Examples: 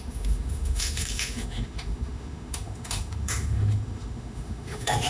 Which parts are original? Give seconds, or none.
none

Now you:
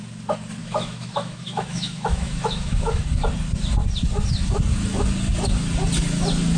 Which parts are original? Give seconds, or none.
0.0-0.6; 3.0-6.6

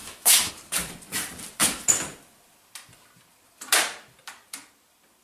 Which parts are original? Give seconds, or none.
0.5-5.2

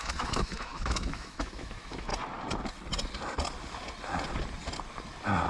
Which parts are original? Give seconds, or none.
2.1-5.5

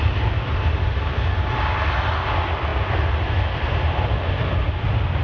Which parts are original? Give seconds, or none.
0.0-5.2